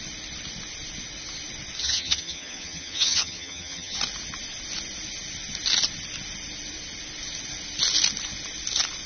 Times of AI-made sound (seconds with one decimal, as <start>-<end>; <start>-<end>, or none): 1.8-4.0